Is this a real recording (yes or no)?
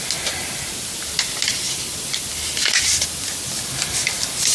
yes